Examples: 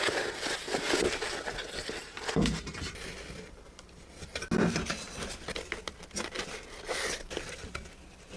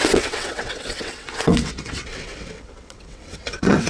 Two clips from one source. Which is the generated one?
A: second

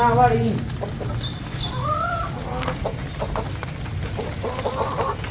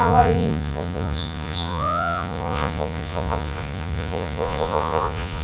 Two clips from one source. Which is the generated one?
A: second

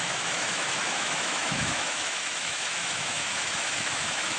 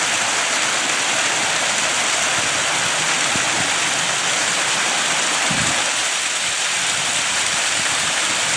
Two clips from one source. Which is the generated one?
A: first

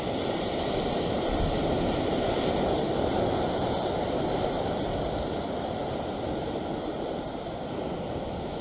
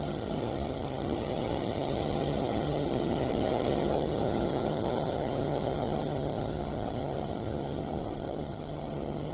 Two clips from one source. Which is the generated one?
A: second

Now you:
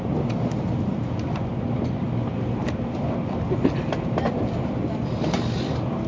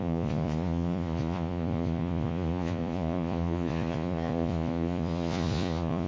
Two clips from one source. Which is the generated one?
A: second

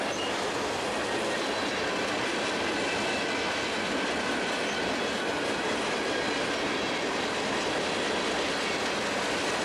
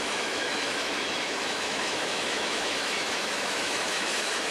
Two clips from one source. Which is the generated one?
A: second